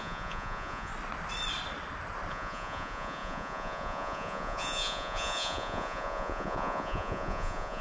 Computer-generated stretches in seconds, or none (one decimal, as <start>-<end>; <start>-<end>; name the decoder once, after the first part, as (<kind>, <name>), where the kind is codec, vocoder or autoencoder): 0.0-0.9 (vocoder, Vocos); 2.3-7.8